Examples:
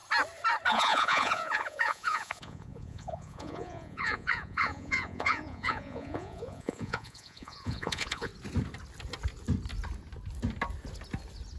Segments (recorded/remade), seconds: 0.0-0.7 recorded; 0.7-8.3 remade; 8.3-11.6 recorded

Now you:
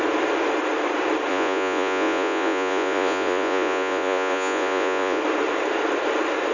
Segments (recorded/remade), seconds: 0.0-1.3 recorded; 1.3-5.2 remade; 5.2-6.5 recorded

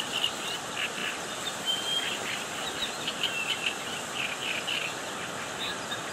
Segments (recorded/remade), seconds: 0.0-6.1 recorded

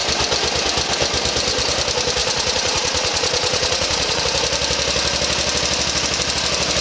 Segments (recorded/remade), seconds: 0.0-2.2 recorded; 2.2-4.2 remade; 4.2-6.8 recorded